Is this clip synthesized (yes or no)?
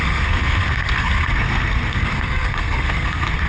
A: yes